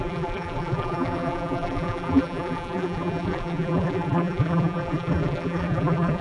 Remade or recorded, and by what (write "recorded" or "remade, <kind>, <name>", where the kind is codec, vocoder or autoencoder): remade, vocoder, BigVGAN v2